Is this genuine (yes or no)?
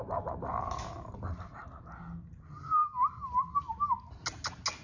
yes